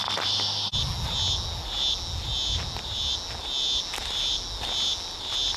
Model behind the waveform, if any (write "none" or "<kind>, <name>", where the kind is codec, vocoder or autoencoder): none